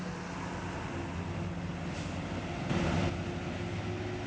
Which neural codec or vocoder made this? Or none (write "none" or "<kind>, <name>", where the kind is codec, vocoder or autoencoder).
none